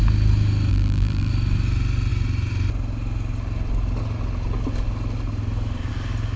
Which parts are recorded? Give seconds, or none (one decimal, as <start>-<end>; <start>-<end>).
0.0-0.7; 1.3-6.4